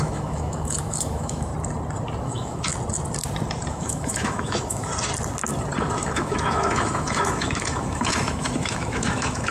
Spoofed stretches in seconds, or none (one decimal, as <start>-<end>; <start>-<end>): 0.0-1.5; 2.2-2.7; 3.7-4.9; 5.9-9.5